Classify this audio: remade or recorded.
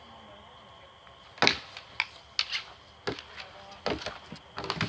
recorded